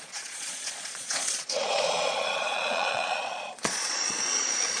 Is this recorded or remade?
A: remade